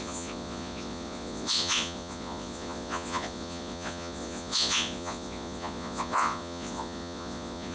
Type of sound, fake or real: fake